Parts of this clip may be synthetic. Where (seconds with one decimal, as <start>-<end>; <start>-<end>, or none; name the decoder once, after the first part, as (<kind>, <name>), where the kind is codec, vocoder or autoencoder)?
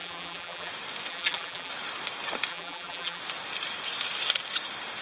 0.0-0.7 (vocoder, BigVGAN v2); 1.1-1.7; 2.5-3.2